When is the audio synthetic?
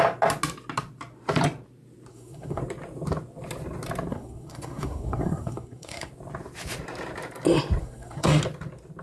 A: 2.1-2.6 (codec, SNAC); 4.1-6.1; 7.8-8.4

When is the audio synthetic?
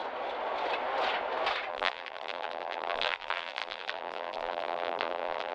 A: 1.7-5.5 (vocoder, BigVGAN v2)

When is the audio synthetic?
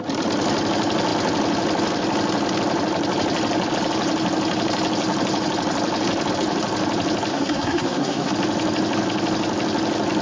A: 7.3-8.3 (codec, SNAC)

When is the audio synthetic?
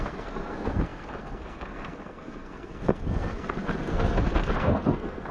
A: 0.0-5.3 (codec, SNAC)